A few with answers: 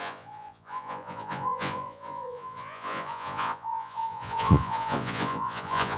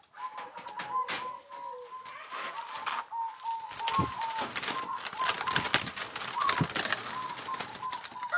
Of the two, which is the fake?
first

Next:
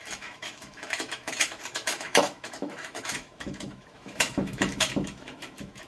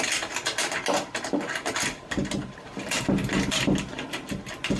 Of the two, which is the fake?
first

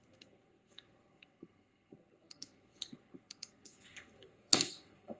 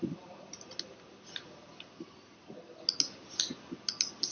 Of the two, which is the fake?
first